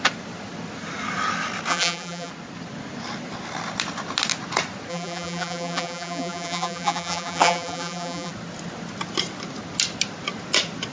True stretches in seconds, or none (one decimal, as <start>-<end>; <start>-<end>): 0.0-1.7; 2.3-4.9; 8.3-10.9